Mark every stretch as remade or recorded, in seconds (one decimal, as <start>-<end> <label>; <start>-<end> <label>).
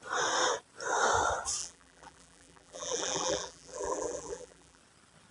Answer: 0.0-1.6 recorded; 1.6-4.8 remade; 4.8-5.3 recorded